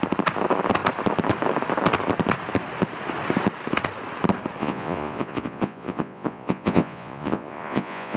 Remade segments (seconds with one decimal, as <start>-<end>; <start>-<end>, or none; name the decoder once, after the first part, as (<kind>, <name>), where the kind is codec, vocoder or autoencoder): 4.6-8.2 (vocoder, Vocos)